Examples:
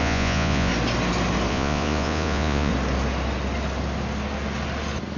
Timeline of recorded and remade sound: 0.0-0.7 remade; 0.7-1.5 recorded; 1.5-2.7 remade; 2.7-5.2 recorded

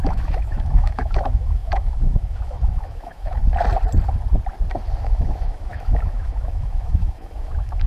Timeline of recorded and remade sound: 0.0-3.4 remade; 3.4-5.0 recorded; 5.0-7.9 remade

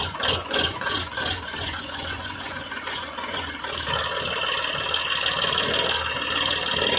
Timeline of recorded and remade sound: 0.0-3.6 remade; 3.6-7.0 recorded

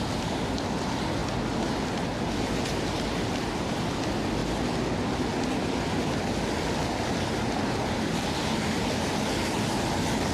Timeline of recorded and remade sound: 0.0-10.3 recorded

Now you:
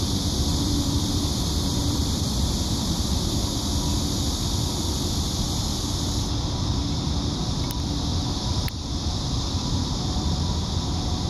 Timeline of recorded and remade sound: 0.0-0.5 recorded; 0.5-3.1 remade; 3.1-8.1 recorded; 8.1-10.4 remade; 10.4-11.3 recorded

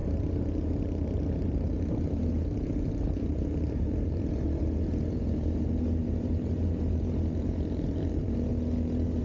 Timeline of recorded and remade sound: 0.0-8.5 remade; 8.5-9.2 recorded